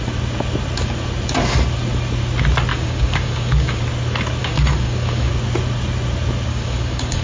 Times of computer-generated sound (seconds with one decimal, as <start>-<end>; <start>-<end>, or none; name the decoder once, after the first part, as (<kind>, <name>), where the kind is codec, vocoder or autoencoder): 2.7-3.8 (codec, DAC); 4.4-5.3; 6.5-7.2